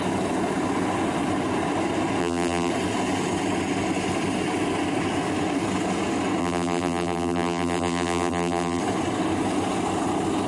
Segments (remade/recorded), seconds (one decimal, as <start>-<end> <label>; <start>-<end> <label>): 0.0-2.2 recorded; 2.2-2.7 remade; 2.7-6.4 recorded; 6.4-8.8 remade; 8.8-10.5 recorded